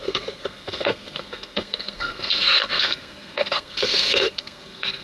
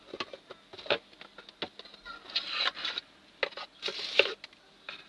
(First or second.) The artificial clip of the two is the first